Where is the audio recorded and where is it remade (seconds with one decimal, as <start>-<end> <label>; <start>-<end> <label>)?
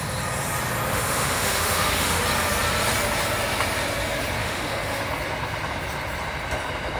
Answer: 0.0-0.9 recorded; 0.9-2.2 remade; 2.2-4.4 recorded; 4.4-5.0 remade; 5.0-7.0 recorded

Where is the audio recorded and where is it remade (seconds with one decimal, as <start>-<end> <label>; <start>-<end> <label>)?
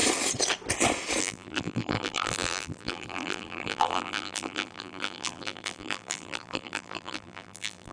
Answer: 0.0-1.2 recorded; 1.2-7.9 remade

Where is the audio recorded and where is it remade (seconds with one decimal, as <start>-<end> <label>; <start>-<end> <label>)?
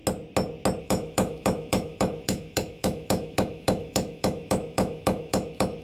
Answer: 0.0-0.8 recorded; 0.8-5.8 remade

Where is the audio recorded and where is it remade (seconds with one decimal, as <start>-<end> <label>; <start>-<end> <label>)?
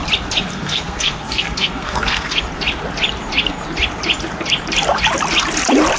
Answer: 0.0-0.5 recorded; 0.5-2.4 remade; 2.4-6.0 recorded